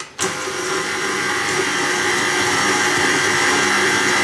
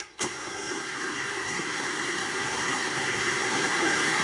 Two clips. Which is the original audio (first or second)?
first